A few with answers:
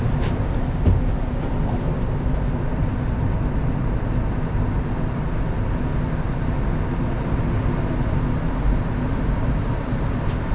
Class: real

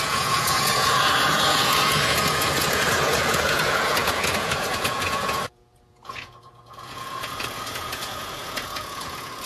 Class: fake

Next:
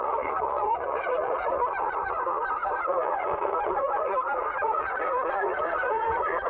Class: fake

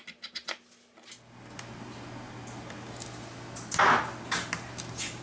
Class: real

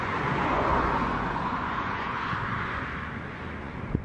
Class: fake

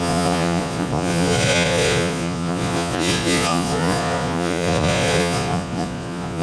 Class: fake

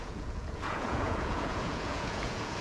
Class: fake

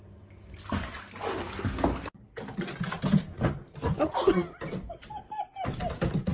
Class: real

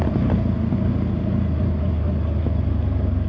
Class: real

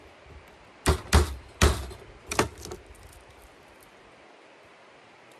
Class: real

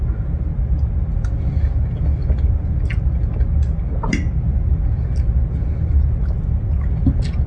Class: real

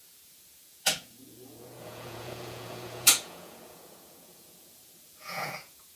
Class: fake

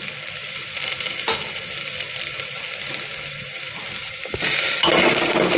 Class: real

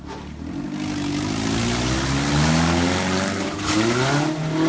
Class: real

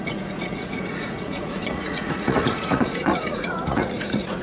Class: fake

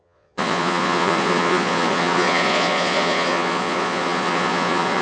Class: fake